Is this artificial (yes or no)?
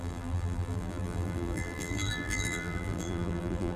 yes